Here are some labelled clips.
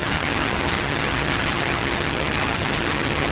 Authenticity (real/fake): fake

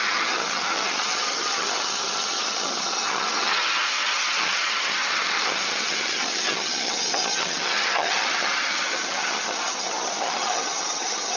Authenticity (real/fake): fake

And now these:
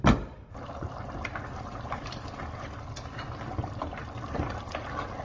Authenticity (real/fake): real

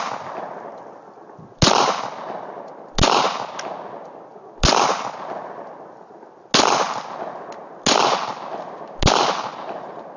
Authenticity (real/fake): real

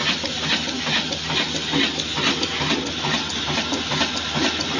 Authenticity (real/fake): real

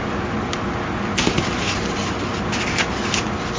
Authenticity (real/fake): real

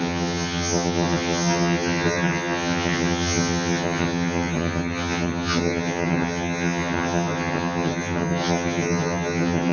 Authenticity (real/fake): fake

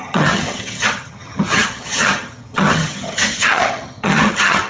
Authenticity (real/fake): fake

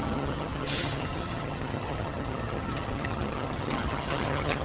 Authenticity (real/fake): fake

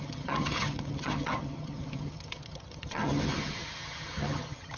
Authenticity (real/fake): fake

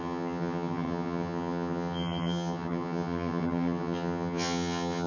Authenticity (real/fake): fake